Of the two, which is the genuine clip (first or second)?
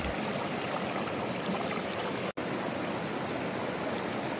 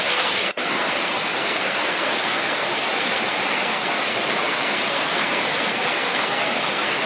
first